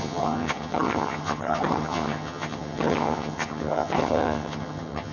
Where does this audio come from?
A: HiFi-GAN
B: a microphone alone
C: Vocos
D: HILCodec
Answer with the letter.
A